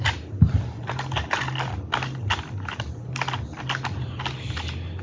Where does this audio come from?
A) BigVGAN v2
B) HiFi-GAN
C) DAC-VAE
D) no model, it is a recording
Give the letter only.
D